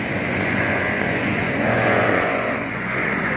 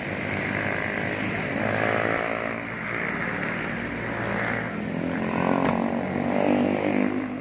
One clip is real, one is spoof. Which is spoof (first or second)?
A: first